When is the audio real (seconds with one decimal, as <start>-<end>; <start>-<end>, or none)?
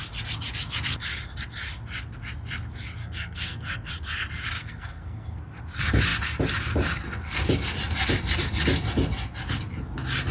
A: 0.0-3.0; 3.9-4.6; 5.6-10.3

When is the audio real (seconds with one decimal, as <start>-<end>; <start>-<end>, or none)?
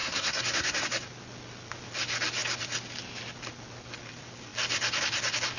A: 0.8-5.6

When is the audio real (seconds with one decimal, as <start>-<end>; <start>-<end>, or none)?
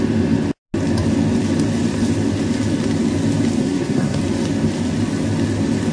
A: 0.0-3.6; 4.2-5.9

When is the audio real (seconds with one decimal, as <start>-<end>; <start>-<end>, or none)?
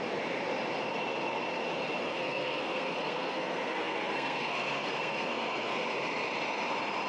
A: 0.0-2.1; 5.8-7.1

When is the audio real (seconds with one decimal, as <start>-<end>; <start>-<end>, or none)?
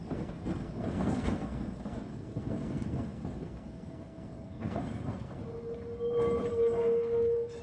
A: 5.4-6.5